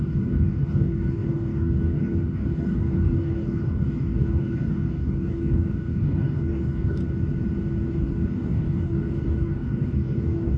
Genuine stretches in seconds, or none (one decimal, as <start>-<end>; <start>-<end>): 7.0-7.9